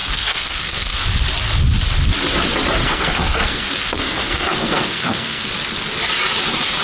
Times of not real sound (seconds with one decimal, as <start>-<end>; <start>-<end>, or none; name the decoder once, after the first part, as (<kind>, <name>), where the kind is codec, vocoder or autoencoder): 0.0-1.0 (codec, SNAC); 2.8-5.5